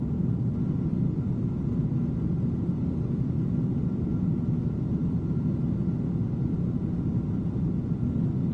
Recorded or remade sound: recorded